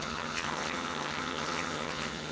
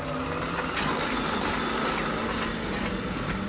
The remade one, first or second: first